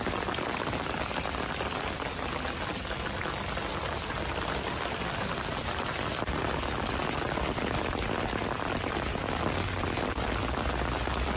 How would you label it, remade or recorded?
recorded